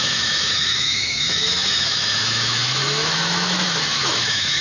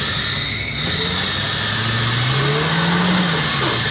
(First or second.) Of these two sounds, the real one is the second